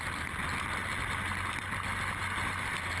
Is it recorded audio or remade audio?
recorded